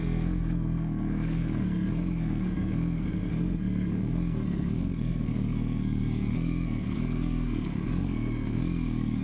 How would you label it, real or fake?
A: fake